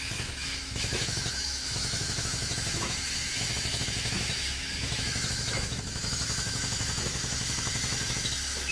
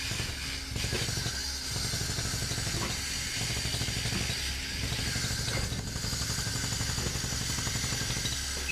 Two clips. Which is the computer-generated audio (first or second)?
first